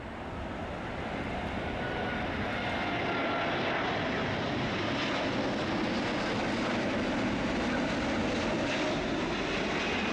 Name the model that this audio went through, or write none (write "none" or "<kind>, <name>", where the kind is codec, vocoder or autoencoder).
none